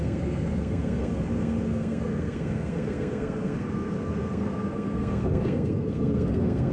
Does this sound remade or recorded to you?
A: remade